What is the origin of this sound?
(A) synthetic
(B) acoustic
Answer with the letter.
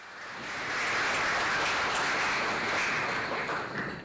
B